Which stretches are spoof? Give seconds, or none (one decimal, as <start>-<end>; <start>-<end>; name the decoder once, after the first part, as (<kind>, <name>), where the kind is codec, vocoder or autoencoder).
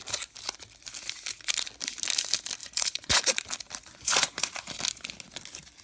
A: 2.6-3.2 (vocoder, Vocos); 3.8-4.5